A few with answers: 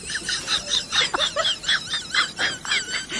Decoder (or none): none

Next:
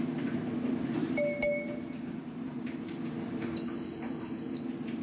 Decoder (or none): vocoder, BigVGAN v2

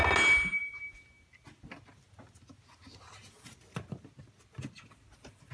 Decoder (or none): none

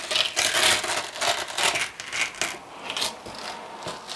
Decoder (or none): none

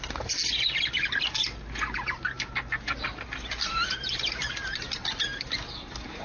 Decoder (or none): none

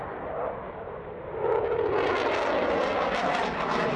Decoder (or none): none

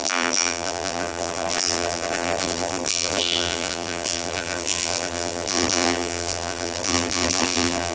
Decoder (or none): vocoder, BigVGAN v2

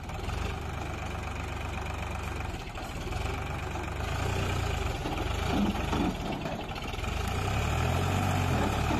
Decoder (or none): none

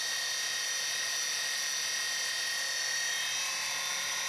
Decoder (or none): none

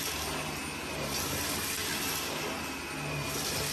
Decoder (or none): none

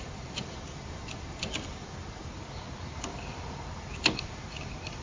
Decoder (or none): none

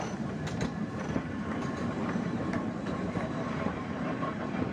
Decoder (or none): vocoder, BigVGAN v2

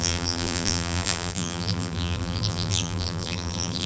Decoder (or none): vocoder, BigVGAN v2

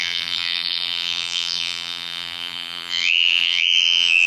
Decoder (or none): vocoder, BigVGAN v2